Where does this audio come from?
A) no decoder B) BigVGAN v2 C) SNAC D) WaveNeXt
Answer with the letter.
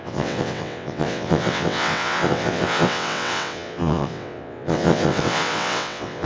D